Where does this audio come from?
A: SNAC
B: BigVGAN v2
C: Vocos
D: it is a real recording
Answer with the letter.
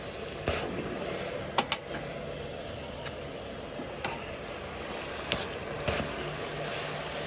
D